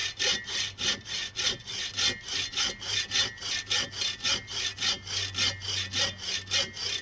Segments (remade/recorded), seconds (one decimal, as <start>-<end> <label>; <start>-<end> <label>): 0.0-7.0 recorded